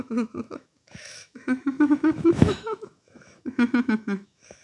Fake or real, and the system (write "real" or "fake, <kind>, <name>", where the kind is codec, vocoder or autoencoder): fake, autoencoder, DAC-VAE